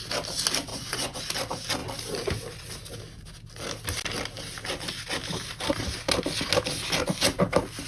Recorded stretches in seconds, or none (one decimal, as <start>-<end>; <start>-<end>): 0.0-0.7; 1.2-7.9